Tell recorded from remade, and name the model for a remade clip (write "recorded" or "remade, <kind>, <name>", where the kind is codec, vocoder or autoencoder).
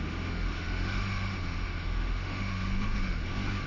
remade, autoencoder, DAC-VAE